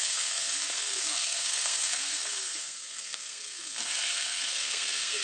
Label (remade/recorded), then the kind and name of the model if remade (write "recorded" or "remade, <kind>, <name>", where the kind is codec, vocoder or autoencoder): remade, codec, SNAC